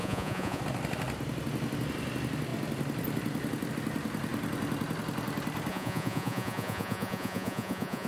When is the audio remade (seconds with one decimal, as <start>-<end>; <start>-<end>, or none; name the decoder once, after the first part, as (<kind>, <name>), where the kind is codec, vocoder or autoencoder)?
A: 0.0-0.6 (vocoder, Vocos); 5.7-8.1